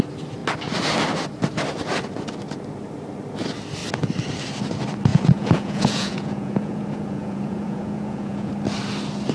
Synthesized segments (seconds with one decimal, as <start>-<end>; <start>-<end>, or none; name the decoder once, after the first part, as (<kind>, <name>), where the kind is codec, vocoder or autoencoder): 5.1-8.5 (vocoder, Vocos)